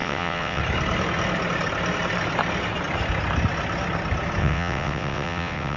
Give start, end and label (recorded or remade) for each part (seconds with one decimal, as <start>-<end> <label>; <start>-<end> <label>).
0.0-0.6 remade; 0.6-4.4 recorded; 4.4-5.8 remade